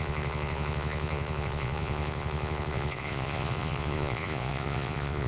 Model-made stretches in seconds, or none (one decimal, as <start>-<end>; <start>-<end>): 0.0-5.3